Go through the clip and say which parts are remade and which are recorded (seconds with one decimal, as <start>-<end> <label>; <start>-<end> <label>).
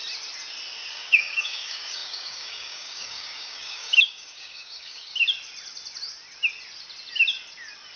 0.0-0.9 recorded; 0.9-5.1 remade; 5.1-8.0 recorded